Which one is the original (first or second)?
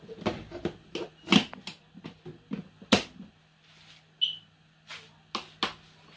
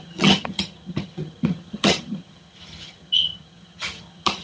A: first